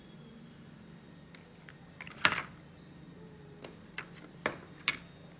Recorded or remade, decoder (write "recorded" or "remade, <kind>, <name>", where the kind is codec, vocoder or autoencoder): recorded